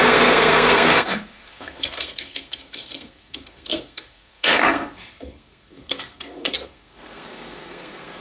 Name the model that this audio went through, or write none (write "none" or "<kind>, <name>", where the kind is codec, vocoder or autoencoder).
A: codec, SNAC